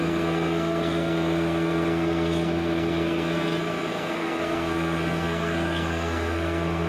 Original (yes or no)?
no